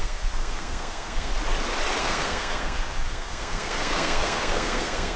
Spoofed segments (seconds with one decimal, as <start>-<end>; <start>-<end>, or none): 0.0-1.3; 2.0-5.2